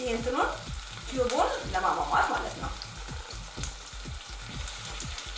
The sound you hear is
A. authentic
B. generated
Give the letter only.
A